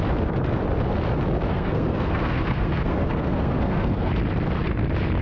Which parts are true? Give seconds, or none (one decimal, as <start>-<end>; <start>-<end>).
0.0-1.5; 4.1-5.2